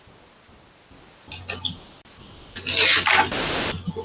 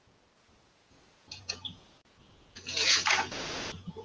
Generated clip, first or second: second